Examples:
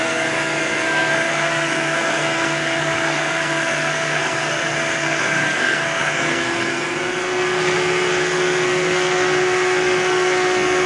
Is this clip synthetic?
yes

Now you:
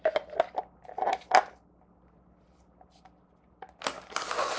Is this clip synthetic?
no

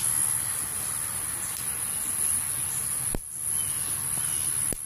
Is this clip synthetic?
no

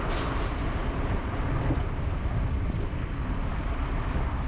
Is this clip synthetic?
no